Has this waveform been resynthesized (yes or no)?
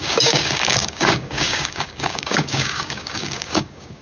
yes